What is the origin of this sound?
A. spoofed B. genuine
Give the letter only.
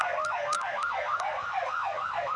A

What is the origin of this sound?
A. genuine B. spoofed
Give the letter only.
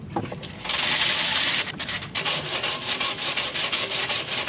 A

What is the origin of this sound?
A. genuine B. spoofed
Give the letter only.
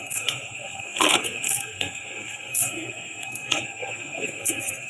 B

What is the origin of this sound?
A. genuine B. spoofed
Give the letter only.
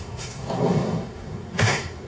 B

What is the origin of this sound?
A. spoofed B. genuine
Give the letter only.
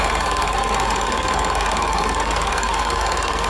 A